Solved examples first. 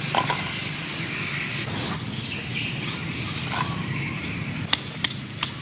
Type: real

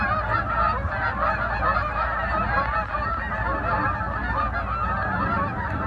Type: real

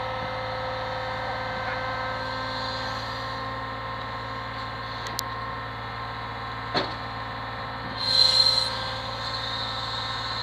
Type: real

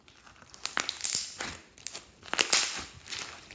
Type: real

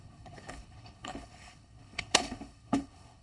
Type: fake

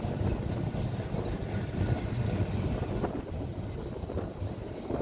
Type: real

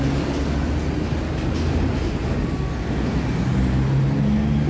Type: real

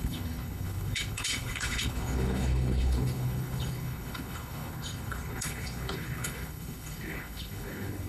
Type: fake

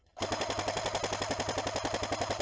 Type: real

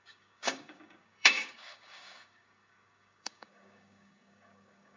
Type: fake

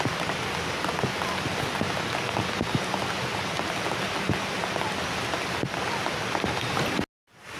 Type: real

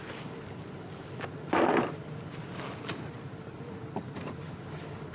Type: real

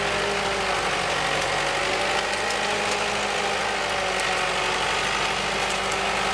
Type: real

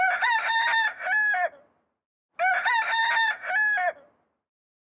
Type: real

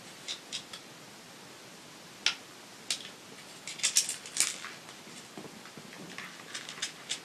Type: real